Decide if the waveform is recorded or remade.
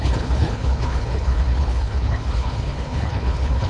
remade